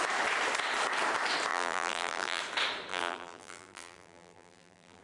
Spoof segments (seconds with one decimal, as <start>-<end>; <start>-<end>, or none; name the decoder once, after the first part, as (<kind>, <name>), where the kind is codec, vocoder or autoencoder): 1.5-2.4 (vocoder, BigVGAN v2); 2.9-5.0